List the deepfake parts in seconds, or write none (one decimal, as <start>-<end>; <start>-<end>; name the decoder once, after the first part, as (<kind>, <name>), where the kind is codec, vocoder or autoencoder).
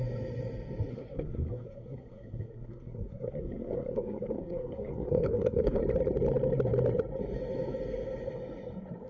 0.9-5.8 (codec, SNAC)